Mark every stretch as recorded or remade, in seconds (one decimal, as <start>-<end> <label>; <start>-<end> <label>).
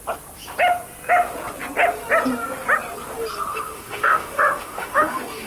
0.0-3.5 recorded; 3.5-5.5 remade